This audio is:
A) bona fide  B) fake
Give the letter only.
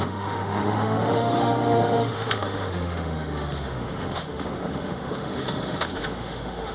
B